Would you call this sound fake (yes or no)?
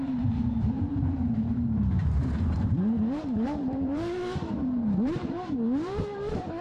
yes